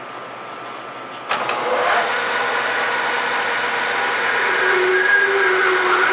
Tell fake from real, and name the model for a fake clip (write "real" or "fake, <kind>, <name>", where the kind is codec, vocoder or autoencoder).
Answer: real